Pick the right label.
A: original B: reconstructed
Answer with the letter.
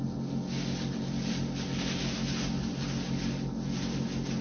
A